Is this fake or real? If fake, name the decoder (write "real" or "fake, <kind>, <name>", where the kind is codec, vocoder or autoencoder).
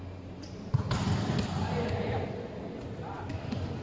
real